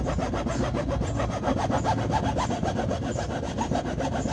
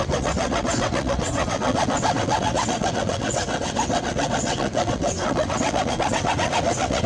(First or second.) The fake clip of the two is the second